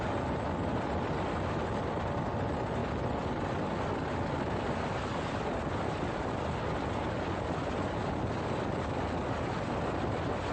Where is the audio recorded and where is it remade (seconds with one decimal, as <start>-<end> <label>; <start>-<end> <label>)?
0.0-10.5 recorded

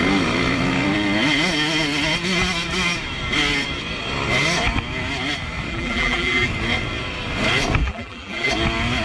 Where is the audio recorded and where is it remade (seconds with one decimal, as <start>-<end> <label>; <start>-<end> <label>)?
0.0-5.7 recorded; 5.7-6.5 remade; 6.5-7.8 recorded; 7.8-8.5 remade; 8.5-9.0 recorded

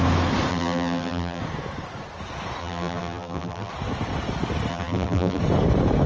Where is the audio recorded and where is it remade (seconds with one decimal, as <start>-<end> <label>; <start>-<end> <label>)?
0.0-0.5 recorded; 0.5-1.4 remade; 1.4-2.6 recorded; 2.6-3.7 remade; 3.7-4.7 recorded; 4.7-5.4 remade; 5.4-6.1 recorded

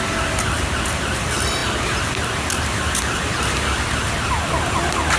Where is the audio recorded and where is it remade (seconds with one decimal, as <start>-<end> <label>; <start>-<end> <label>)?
0.0-5.2 recorded

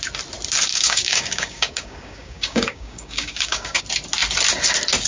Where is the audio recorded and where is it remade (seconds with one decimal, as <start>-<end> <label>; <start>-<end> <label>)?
0.0-0.7 recorded; 0.7-3.8 remade; 3.8-5.1 recorded